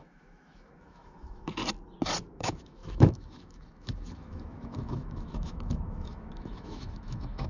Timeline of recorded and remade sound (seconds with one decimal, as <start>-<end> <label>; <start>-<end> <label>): 0.0-1.6 remade; 1.6-2.3 recorded; 2.3-7.5 remade